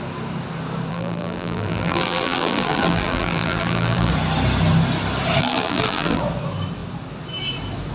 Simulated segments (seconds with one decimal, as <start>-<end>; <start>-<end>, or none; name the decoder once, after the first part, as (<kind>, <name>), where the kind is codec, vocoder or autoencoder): 0.9-4.1 (vocoder, BigVGAN v2); 5.4-6.2